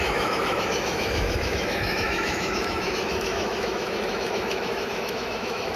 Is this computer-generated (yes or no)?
yes